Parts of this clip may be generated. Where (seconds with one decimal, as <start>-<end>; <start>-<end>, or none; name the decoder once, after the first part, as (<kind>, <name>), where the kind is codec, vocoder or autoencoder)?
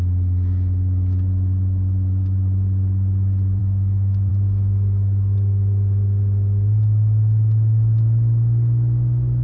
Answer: 3.6-4.3 (autoencoder, DAC-VAE)